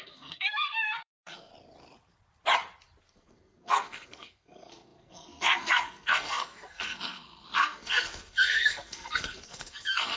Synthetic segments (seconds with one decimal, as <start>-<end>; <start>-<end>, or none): 0.0-1.5; 3.0-10.2